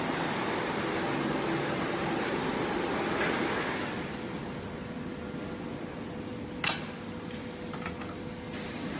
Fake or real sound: real